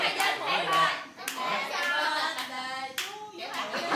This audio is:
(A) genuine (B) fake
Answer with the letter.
A